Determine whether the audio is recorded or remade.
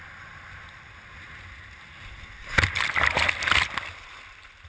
recorded